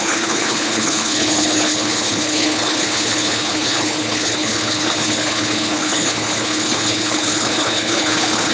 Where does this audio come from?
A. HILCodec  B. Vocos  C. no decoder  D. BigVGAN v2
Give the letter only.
A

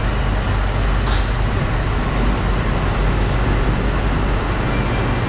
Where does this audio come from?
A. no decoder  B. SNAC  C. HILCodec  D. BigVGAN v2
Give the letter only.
A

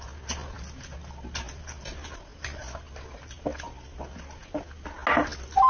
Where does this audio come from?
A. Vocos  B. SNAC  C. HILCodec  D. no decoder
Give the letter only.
D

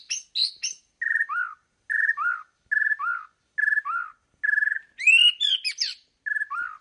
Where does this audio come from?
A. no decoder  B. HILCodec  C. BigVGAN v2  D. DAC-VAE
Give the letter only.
A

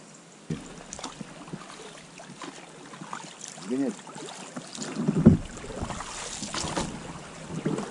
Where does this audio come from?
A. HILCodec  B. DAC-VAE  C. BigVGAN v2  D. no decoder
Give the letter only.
D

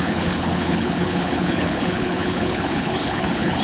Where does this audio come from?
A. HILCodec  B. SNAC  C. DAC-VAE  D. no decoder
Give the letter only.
A